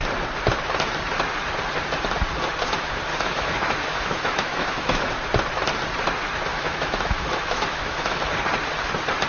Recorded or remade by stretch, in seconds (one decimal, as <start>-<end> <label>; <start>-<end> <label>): 0.0-3.1 recorded; 3.1-5.1 remade; 5.1-6.5 recorded; 6.5-8.2 remade; 8.2-9.3 recorded